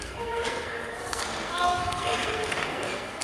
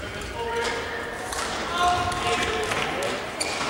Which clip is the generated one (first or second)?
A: first